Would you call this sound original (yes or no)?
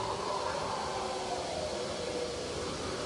yes